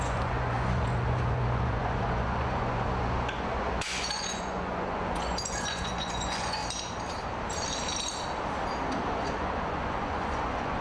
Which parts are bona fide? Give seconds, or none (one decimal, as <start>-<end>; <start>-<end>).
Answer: 6.6-9.0